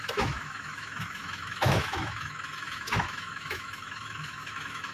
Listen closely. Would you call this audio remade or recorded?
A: remade